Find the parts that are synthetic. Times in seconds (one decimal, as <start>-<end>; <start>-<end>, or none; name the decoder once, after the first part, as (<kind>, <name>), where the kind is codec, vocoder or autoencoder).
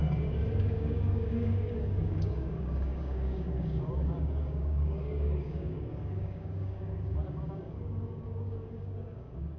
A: 0.0-9.6 (codec, DAC)